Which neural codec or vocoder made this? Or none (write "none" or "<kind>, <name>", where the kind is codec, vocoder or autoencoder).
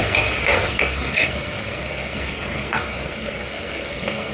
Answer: codec, SNAC